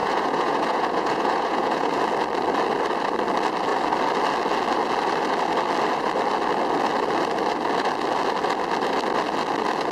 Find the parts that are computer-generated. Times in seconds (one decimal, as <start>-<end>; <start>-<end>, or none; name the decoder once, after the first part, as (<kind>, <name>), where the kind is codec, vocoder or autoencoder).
0.0-2.0 (vocoder, Vocos)